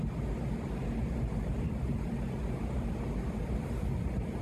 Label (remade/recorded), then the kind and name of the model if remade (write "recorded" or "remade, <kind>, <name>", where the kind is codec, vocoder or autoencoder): recorded